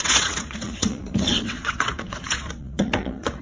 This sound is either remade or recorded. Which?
remade